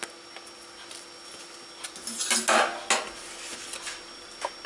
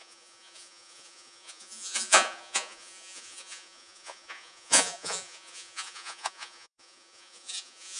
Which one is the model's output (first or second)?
second